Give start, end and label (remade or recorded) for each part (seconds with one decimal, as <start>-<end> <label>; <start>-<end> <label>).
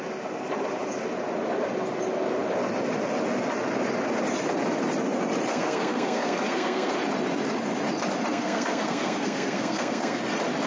0.0-5.5 recorded; 5.5-6.9 remade; 6.9-8.3 recorded; 8.3-10.2 remade; 10.2-10.7 recorded